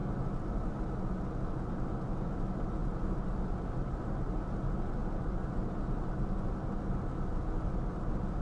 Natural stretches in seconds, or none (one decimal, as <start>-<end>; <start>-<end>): 0.0-2.8; 4.0-5.0; 6.0-8.4

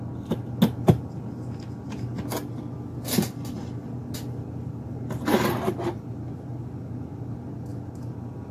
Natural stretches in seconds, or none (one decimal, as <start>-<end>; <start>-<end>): 0.0-8.5

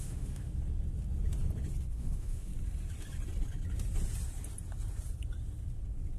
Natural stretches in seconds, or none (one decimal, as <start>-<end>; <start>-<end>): 0.5-1.9; 2.5-6.2

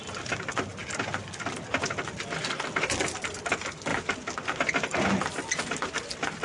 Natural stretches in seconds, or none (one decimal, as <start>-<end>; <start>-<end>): 0.0-6.4

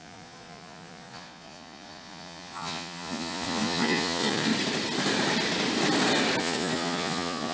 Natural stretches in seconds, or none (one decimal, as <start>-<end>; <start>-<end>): 4.5-6.4

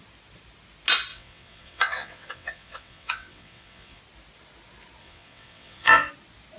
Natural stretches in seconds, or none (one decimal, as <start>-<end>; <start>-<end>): 0.0-1.1; 4.0-5.0; 6.1-6.6